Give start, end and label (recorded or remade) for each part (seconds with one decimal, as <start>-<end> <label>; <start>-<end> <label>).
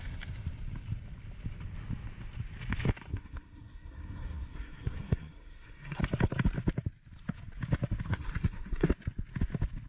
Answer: 0.0-3.1 recorded; 3.1-6.0 remade; 6.0-8.1 recorded; 8.1-8.9 remade; 8.9-9.9 recorded